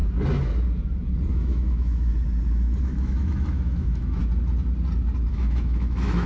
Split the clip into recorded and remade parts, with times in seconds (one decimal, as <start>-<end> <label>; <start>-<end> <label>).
0.0-1.3 recorded; 1.3-2.1 remade; 2.1-2.8 recorded; 2.8-4.2 remade; 4.2-5.3 recorded; 5.3-6.3 remade